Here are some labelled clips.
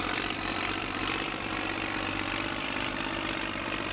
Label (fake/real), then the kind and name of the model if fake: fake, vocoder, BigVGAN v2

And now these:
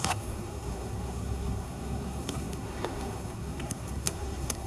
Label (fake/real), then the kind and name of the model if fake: fake, codec, SNAC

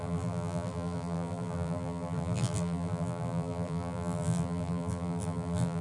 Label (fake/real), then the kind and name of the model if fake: fake, vocoder, BigVGAN v2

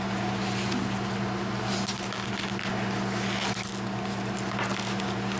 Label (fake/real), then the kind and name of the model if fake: real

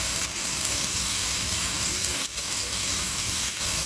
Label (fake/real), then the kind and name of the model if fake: fake, codec, DAC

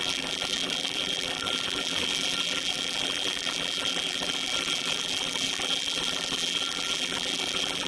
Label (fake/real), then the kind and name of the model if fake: fake, vocoder, BigVGAN v2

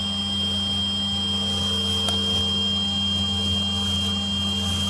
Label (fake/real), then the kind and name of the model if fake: real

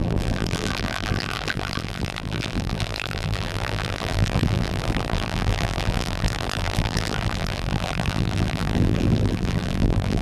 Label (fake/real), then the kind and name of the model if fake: fake, vocoder, BigVGAN v2